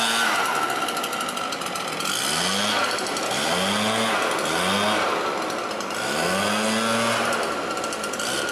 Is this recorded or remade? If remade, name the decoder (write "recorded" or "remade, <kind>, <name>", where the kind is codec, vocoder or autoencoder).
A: recorded